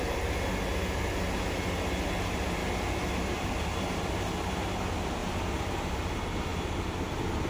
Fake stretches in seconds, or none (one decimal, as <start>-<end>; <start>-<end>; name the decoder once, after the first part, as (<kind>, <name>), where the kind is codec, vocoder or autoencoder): 2.6-4.1 (vocoder, BigVGAN v2); 6.5-7.5